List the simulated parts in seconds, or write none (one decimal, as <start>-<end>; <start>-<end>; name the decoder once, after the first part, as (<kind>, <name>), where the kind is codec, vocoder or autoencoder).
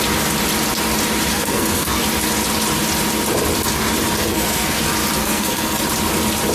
1.3-2.0 (codec, SNAC); 4.2-4.8; 5.2-5.8